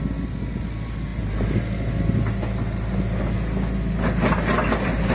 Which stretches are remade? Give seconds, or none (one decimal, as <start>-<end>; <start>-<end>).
none